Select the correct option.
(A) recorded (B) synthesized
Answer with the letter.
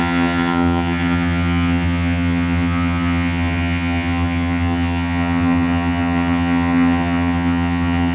B